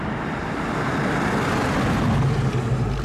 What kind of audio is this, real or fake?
real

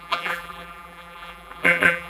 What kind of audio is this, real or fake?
fake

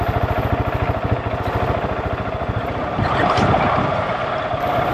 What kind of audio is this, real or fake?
real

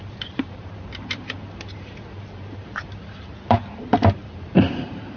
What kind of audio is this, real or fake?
fake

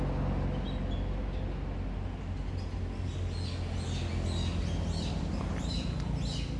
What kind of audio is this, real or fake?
real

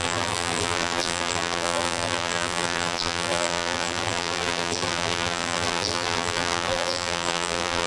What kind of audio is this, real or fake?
fake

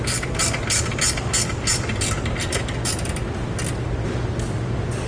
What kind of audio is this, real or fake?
real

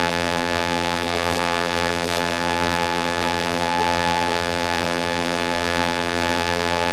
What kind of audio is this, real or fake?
fake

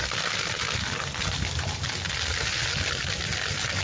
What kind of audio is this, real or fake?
real